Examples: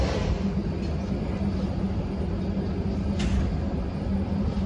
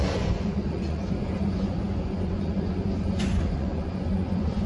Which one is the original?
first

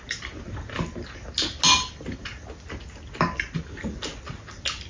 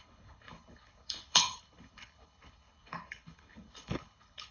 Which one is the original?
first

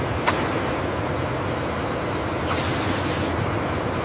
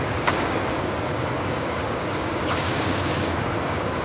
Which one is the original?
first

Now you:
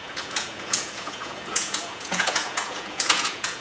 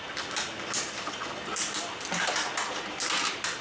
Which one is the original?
second